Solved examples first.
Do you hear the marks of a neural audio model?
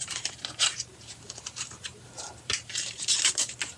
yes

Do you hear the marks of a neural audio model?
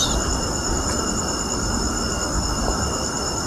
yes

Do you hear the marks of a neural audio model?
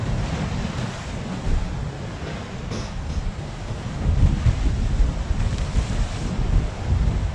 no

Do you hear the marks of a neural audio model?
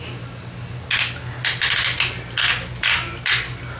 no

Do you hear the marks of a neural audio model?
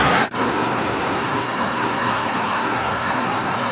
yes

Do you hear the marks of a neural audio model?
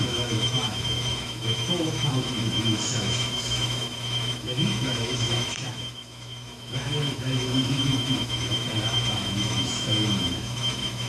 yes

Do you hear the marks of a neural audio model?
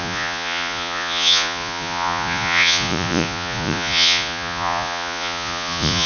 yes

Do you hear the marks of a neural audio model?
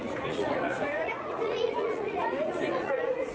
yes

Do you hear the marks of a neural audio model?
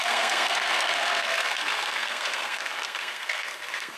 yes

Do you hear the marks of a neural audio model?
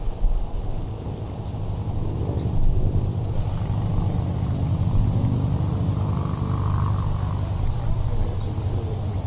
no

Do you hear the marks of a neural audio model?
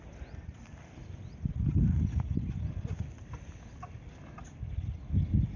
no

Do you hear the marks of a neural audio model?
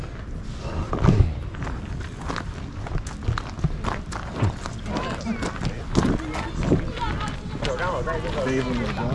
no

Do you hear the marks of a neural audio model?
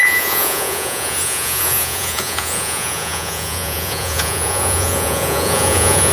yes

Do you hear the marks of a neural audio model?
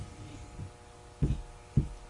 no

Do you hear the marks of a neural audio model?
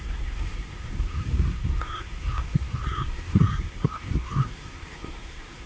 yes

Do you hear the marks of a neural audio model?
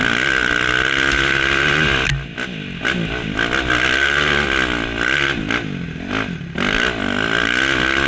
no